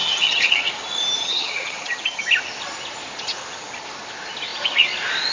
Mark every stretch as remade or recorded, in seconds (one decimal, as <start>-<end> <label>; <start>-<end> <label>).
0.0-0.7 remade; 0.7-1.2 recorded; 1.2-2.2 remade; 2.2-5.3 recorded